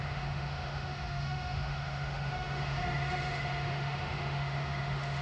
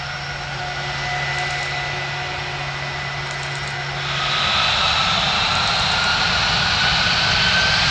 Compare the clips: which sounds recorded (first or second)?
second